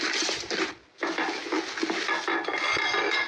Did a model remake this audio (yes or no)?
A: no